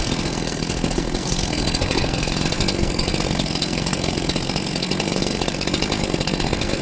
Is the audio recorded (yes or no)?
no